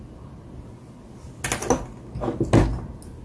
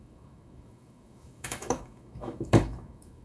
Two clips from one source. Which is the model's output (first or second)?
second